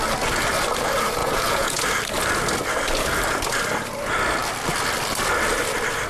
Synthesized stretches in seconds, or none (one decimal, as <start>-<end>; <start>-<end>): 1.2-1.8